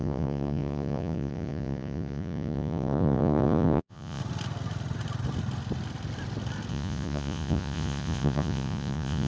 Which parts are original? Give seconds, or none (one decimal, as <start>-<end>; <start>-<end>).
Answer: 4.2-6.7